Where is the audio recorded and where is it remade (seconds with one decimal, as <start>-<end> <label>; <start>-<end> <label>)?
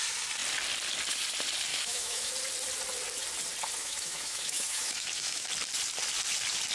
0.0-1.7 recorded; 1.7-2.3 remade; 2.3-3.8 recorded; 3.8-5.5 remade; 5.5-6.7 recorded